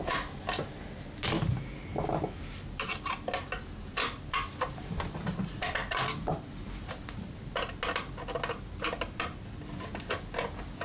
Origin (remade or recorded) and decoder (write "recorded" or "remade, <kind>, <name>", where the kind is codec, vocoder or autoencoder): recorded